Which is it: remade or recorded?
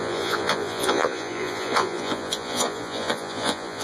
remade